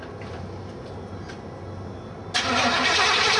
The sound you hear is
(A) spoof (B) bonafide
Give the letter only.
B